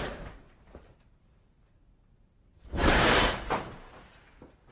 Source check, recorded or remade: remade